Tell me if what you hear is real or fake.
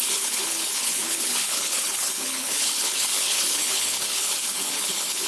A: fake